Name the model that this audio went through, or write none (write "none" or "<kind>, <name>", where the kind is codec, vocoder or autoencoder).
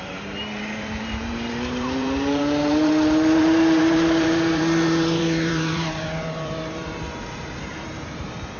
vocoder, BigVGAN v2